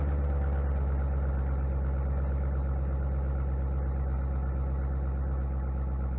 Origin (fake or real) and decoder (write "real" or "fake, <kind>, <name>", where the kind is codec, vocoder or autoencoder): real